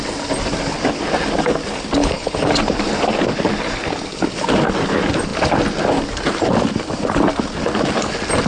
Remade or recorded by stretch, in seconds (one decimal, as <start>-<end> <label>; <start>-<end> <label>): 0.0-2.0 recorded; 2.0-2.5 remade; 2.5-8.5 recorded